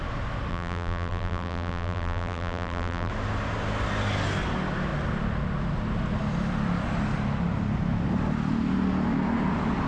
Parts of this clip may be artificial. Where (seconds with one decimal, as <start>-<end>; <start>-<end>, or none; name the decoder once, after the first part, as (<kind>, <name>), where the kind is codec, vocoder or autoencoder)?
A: 0.5-3.1 (vocoder, BigVGAN v2)